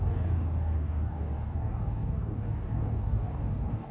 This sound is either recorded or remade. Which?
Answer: remade